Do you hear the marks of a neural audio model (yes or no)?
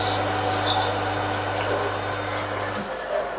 no